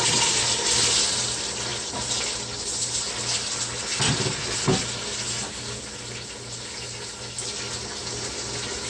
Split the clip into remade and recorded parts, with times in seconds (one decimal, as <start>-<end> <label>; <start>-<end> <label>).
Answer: 0.0-8.9 recorded

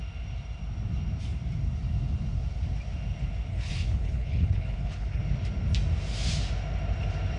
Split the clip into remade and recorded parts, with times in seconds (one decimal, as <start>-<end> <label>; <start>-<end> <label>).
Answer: 0.0-3.5 recorded; 3.5-5.2 remade; 5.2-7.4 recorded

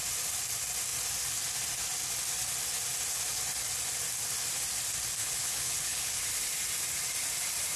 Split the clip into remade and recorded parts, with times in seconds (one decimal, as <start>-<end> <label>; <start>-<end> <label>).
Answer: 0.0-5.2 recorded; 5.2-6.2 remade; 6.2-7.8 recorded

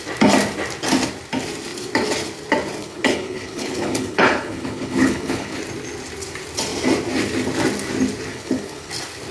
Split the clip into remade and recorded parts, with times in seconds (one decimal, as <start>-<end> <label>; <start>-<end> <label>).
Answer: 0.0-2.8 recorded; 2.8-5.6 remade; 5.6-8.3 recorded; 8.3-8.9 remade; 8.9-9.3 recorded

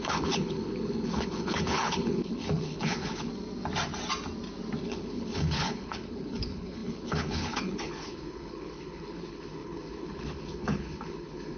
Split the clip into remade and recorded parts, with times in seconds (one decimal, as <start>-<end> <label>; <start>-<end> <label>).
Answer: 0.0-3.3 remade; 3.3-4.8 recorded; 4.8-11.6 remade

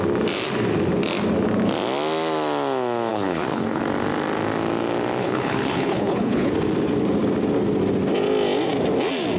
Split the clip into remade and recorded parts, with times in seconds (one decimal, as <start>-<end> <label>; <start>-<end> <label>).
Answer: 0.0-3.1 recorded; 3.1-3.8 remade; 3.8-5.2 recorded; 5.2-6.5 remade; 6.5-9.4 recorded

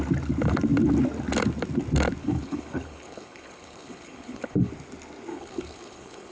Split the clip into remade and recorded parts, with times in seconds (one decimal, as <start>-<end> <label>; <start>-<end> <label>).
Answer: 0.0-2.2 recorded; 2.2-4.7 remade; 4.7-5.3 recorded; 5.3-6.3 remade

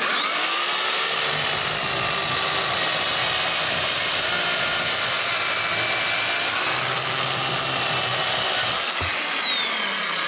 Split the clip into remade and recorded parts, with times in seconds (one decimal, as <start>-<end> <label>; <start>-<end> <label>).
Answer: 0.0-10.3 recorded